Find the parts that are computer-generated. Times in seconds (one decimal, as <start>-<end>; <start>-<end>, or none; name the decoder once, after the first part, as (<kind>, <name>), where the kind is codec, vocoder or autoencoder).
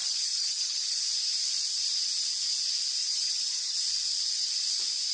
0.0-1.0 (vocoder, HiFi-GAN); 3.0-3.8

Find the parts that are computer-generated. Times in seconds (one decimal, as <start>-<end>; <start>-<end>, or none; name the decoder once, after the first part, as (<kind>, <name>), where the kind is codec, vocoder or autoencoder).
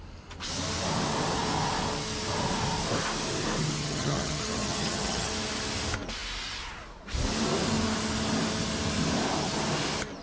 3.8-5.3 (vocoder, HiFi-GAN)